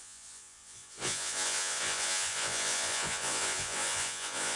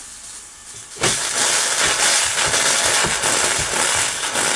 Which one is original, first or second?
second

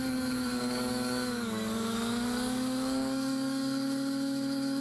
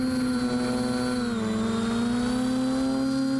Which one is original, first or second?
second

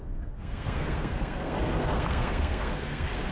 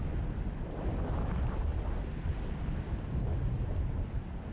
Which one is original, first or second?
second